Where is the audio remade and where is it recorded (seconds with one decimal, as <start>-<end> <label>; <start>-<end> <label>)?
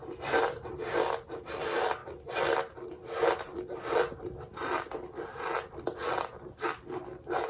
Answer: 0.0-7.5 recorded